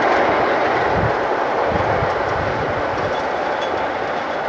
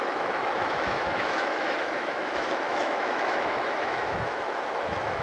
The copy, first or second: second